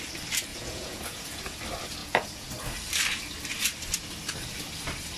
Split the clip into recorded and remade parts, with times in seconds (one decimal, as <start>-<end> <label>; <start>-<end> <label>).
0.0-0.5 recorded; 0.5-1.6 remade; 1.6-2.0 recorded; 2.0-2.5 remade; 2.5-5.2 recorded